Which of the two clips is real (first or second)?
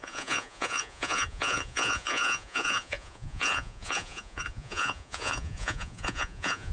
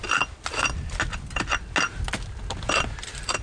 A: second